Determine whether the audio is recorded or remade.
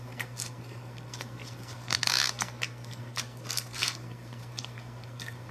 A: remade